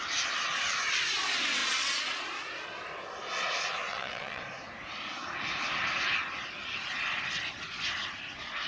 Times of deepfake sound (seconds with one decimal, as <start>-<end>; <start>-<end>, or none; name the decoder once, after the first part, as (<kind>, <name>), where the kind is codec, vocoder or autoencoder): 3.8-4.4 (vocoder, WaveNeXt)